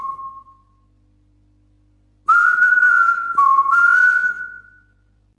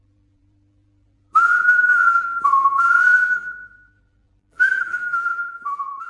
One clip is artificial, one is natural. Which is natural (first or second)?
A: first